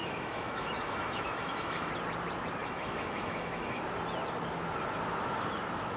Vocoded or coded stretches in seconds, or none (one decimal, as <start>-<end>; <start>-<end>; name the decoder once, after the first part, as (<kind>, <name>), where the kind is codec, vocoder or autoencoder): 0.0-1.9 (autoencoder, DAC-VAE); 2.6-3.8